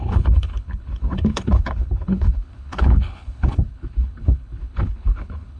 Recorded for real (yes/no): no